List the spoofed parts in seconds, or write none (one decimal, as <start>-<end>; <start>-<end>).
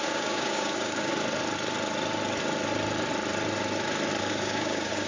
0.0-1.1; 4.2-5.1